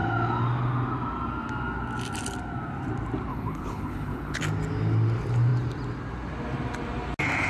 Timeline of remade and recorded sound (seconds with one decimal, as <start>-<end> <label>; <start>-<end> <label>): 0.0-3.3 recorded; 3.3-4.4 remade; 4.4-7.5 recorded